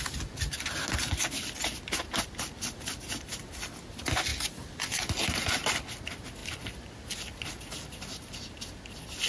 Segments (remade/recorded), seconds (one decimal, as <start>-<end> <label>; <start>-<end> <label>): 0.0-9.3 recorded